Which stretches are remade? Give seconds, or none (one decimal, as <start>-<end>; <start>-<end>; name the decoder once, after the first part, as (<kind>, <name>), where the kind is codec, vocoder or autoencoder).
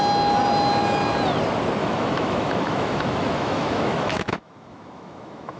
1.8-5.6 (autoencoder, DAC-VAE)